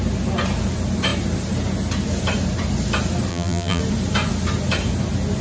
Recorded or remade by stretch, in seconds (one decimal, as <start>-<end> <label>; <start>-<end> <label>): 0.0-3.3 recorded; 3.3-3.8 remade; 3.8-5.4 recorded